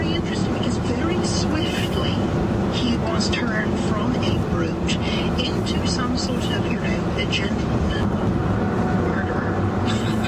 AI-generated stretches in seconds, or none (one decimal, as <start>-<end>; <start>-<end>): 0.4-1.0

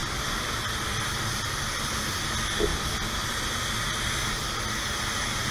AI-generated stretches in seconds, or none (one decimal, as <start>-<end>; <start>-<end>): 0.0-2.0; 2.7-3.5

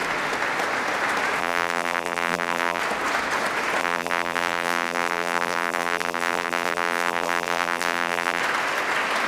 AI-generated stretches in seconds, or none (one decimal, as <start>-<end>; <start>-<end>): 1.4-2.8; 3.8-8.4

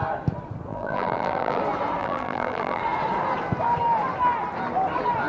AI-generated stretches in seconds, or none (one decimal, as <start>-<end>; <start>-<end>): 0.7-1.6; 2.0-2.8